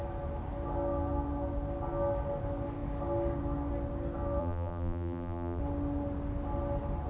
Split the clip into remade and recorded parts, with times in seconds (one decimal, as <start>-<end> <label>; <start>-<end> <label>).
0.0-4.4 recorded; 4.4-5.6 remade; 5.6-7.1 recorded